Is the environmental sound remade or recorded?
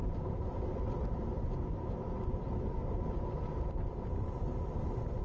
recorded